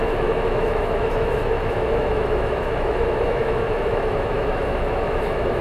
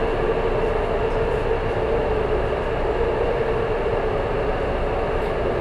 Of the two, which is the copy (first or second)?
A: first